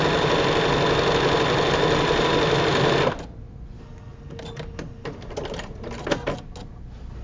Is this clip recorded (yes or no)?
yes